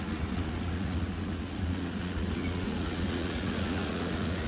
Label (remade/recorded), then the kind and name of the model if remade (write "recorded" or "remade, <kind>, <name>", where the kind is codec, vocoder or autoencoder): remade, vocoder, Vocos